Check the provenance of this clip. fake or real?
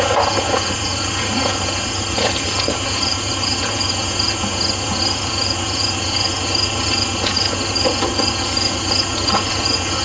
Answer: fake